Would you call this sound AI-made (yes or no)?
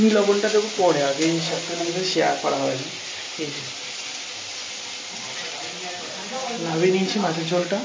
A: no